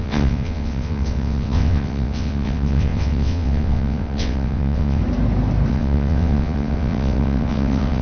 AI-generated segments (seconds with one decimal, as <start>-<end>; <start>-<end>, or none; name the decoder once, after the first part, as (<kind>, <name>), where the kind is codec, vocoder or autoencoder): 0.0-5.0 (vocoder, WaveNeXt); 5.7-8.0